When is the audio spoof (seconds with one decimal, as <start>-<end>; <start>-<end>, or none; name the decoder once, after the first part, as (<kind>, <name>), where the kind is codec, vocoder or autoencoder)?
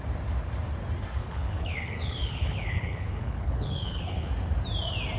1.2-4.3 (codec, HILCodec)